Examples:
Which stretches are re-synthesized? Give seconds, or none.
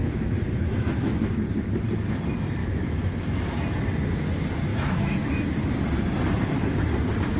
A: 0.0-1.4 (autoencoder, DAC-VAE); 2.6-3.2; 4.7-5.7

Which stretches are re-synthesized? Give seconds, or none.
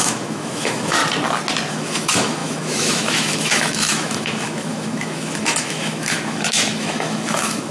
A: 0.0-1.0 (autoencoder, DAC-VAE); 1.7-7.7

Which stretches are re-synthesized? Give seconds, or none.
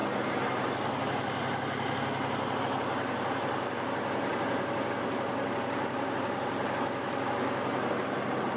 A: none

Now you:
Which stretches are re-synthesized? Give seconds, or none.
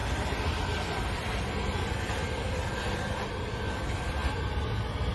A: none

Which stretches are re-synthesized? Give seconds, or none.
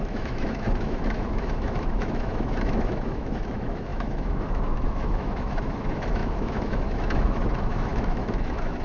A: 0.0-8.8 (autoencoder, DAC-VAE)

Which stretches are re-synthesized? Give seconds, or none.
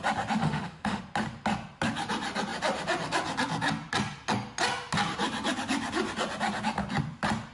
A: 0.4-1.0 (autoencoder, DAC-VAE)